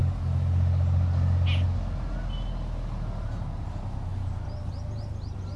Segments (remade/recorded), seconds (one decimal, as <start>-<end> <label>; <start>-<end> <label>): 0.0-5.6 recorded